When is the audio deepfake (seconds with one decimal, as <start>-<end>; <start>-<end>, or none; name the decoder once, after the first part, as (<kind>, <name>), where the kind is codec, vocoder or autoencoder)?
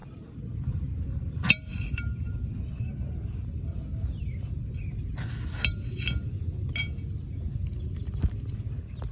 0.0-3.4 (vocoder, BigVGAN v2)